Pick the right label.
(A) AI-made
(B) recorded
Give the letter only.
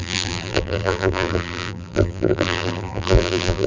A